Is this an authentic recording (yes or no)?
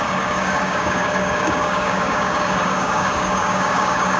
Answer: no